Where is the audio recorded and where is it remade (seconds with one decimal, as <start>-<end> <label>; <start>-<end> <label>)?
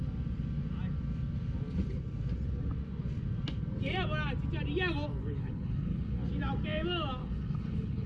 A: 0.0-5.2 recorded; 5.2-6.2 remade; 6.2-7.2 recorded; 7.2-8.1 remade